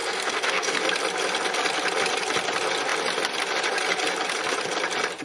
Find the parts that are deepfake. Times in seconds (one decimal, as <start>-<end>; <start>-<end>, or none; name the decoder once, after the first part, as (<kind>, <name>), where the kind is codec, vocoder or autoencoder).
0.0-0.8 (codec, SNAC)